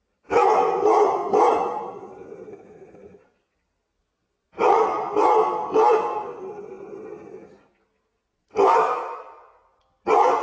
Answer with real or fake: real